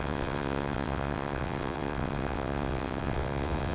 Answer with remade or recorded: remade